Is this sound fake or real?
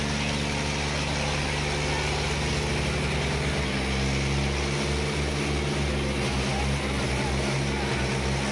real